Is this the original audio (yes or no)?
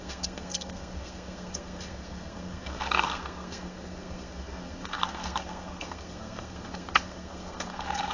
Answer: no